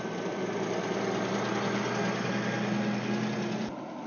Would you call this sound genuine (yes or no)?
yes